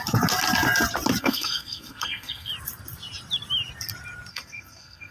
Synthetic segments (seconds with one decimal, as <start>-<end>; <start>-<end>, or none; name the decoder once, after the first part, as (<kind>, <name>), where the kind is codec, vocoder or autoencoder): 1.2-2.5 (codec, SNAC); 4.3-5.1